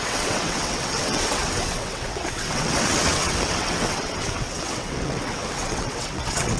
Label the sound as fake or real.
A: fake